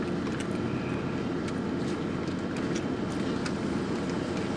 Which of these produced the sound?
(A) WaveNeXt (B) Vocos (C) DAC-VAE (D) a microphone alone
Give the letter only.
D